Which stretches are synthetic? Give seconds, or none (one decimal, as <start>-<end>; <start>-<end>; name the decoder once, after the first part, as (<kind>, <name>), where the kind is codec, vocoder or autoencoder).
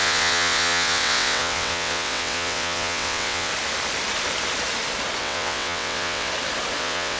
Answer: 0.0-3.5 (vocoder, WaveNeXt); 5.2-6.3; 6.8-7.2